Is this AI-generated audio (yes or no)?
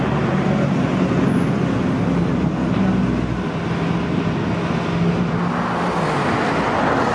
no